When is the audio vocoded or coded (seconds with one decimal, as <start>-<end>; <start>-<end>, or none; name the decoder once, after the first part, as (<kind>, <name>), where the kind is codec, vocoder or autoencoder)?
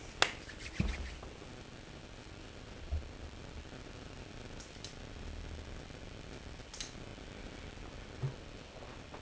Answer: none